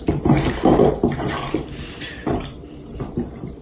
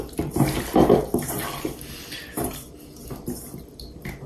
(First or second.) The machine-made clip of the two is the first